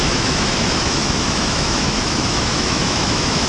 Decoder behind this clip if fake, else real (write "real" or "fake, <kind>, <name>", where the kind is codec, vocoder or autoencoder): fake, autoencoder, DAC-VAE